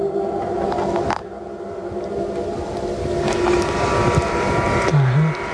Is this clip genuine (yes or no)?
yes